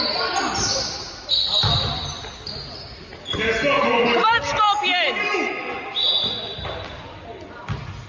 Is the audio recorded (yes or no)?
yes